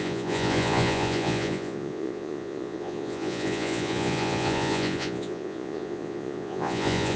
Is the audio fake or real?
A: fake